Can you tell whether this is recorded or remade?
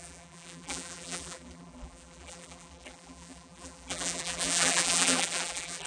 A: remade